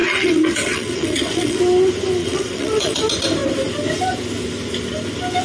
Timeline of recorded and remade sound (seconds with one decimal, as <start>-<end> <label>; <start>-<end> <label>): 0.0-1.6 remade; 1.6-2.2 recorded; 2.2-3.0 remade; 3.0-5.4 recorded